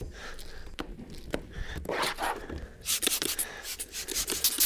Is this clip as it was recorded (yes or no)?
yes